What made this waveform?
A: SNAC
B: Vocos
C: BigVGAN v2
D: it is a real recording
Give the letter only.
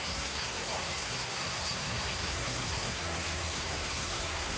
A